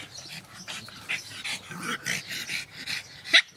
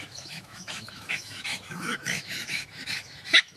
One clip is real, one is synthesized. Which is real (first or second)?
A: first